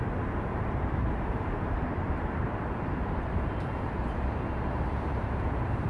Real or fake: fake